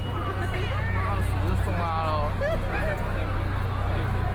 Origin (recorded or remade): recorded